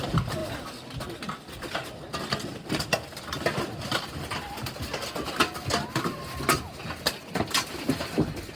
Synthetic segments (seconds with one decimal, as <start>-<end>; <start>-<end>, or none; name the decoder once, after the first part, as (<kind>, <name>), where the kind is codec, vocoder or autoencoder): none